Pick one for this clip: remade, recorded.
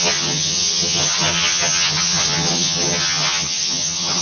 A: remade